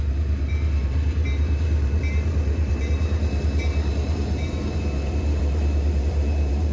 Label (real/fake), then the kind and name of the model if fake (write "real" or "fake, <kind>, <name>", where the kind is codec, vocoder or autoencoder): fake, vocoder, BigVGAN v2